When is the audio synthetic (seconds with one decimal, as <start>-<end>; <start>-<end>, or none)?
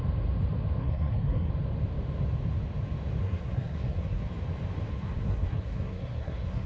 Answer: 0.8-1.5; 3.2-4.2; 4.9-6.7